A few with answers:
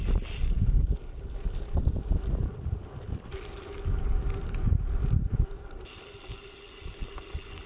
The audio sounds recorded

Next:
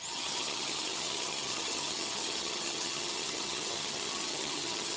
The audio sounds remade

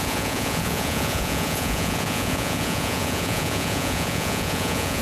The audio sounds remade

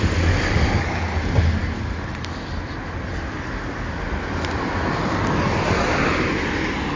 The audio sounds recorded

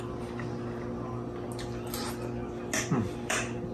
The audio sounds recorded